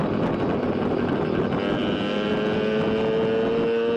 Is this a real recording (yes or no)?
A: yes